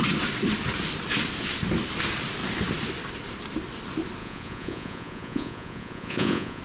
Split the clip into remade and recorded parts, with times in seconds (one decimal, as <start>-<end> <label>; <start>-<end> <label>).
0.0-4.2 recorded; 4.2-6.6 remade